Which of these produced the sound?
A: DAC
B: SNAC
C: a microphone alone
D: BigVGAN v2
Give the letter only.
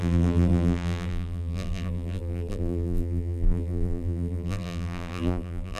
D